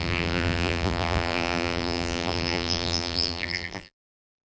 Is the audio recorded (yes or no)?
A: no